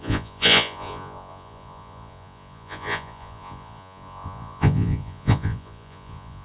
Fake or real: fake